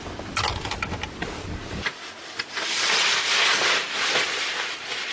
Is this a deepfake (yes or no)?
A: no